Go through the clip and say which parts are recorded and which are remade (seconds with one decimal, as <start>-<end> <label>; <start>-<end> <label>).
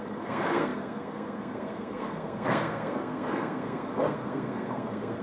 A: 0.0-5.2 remade